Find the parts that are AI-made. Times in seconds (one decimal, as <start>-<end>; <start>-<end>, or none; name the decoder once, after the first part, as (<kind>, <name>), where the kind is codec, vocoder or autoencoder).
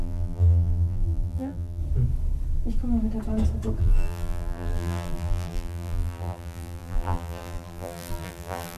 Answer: 0.0-1.8 (vocoder, BigVGAN v2); 3.8-8.8